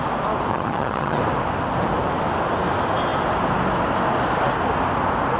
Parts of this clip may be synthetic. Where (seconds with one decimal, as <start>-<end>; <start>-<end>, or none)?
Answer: 0.5-1.2